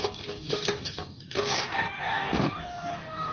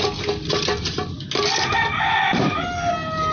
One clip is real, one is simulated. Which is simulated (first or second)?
first